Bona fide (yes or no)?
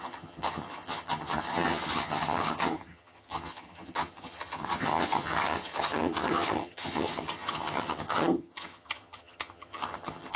no